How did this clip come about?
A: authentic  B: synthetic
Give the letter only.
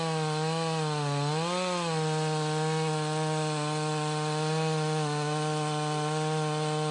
A